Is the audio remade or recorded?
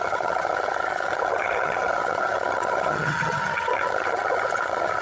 remade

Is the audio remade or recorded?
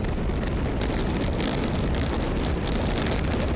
recorded